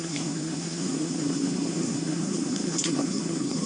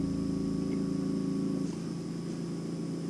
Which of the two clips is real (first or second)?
second